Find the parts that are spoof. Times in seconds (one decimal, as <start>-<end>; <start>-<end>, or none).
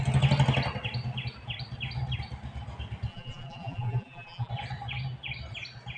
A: 3.1-4.5